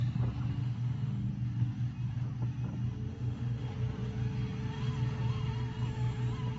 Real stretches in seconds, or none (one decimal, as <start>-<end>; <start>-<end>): 0.0-0.6; 1.3-3.1; 3.7-6.6

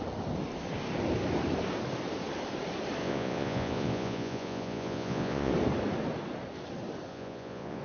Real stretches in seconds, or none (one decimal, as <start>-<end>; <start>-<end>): 0.0-3.0; 5.5-7.1

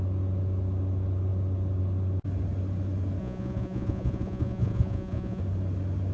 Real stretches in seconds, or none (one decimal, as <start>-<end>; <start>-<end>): 0.0-3.2; 5.4-6.1

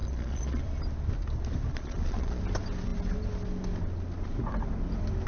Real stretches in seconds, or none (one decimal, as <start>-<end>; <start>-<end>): 0.6-1.7; 2.4-5.3

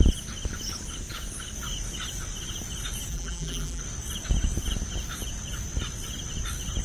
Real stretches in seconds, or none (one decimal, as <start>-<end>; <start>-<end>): 0.0-3.1; 3.8-6.8